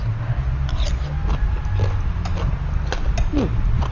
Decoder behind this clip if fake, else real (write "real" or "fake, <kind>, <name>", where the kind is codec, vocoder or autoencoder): real